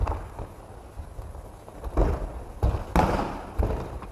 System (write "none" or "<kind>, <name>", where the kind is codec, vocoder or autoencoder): none